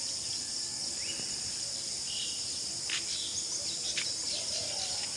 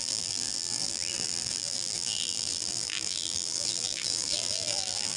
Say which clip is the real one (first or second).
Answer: first